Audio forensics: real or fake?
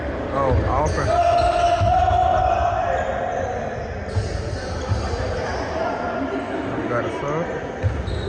real